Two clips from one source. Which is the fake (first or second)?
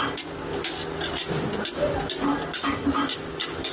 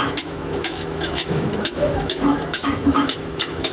second